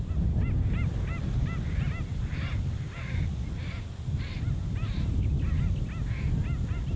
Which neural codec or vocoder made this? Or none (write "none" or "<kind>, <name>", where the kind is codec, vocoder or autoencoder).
none